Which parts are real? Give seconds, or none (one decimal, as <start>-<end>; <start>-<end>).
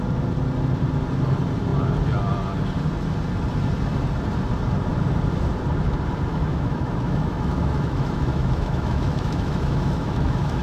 0.0-6.3